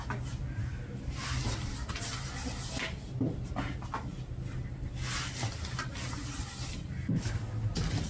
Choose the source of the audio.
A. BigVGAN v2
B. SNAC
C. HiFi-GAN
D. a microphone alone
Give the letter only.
D